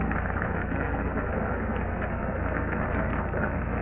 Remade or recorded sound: remade